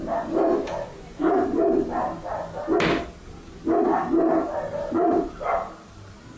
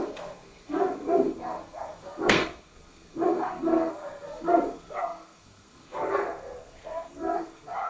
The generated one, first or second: second